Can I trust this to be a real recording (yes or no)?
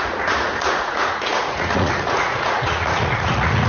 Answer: no